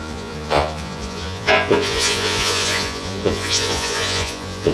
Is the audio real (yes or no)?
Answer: no